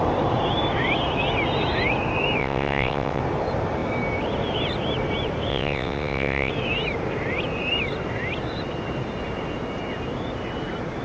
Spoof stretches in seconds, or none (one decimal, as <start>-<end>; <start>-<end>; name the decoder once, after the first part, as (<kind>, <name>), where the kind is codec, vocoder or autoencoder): 2.4-3.2 (vocoder, WaveNeXt); 5.5-6.5